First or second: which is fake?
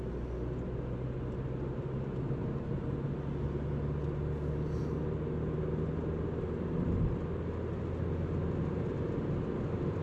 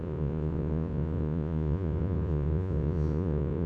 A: second